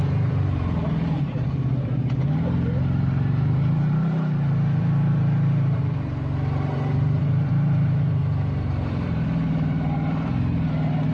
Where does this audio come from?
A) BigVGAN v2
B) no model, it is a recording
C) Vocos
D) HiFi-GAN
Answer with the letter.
A